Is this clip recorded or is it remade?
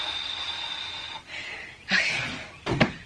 remade